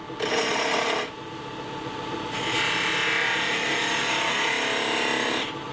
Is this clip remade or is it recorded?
recorded